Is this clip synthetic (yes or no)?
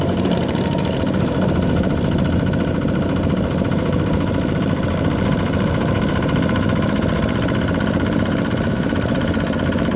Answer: yes